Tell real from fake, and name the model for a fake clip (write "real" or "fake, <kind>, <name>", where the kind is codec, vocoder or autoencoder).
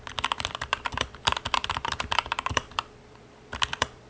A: fake, vocoder, BigVGAN v2